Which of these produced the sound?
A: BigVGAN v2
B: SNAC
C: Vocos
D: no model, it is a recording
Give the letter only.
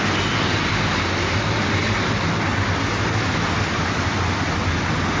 D